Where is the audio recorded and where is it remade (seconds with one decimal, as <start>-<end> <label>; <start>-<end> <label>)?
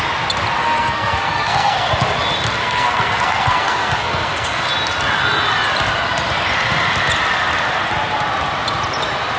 0.0-0.6 recorded; 0.6-1.9 remade; 1.9-2.6 recorded; 2.6-4.7 remade; 4.7-9.4 recorded